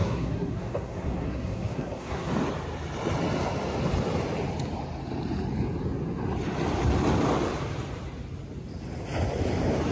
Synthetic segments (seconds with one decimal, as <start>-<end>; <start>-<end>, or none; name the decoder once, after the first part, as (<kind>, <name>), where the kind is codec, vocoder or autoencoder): 0.0-2.3 (codec, SNAC)